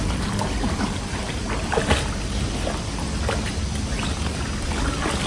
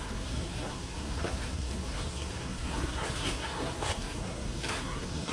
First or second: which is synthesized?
second